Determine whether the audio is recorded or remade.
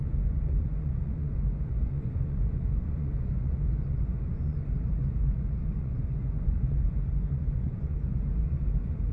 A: remade